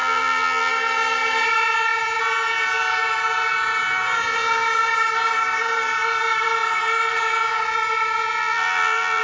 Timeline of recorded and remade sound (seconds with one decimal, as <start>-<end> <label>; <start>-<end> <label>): 0.0-0.7 remade; 0.7-8.4 recorded; 8.4-9.2 remade